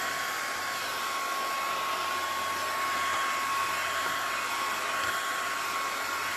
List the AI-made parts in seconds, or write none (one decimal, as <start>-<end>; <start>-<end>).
none